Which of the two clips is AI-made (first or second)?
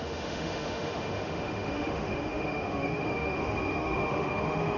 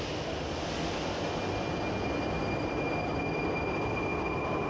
first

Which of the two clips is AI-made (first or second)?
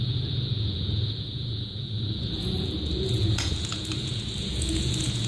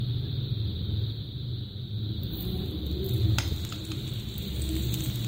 first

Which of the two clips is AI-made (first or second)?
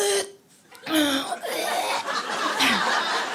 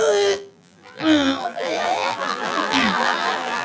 second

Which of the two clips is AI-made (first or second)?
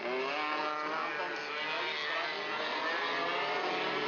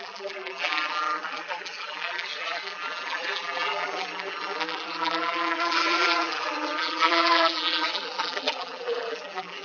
second